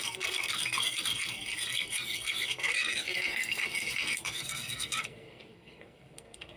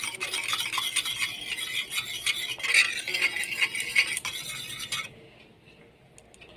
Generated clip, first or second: first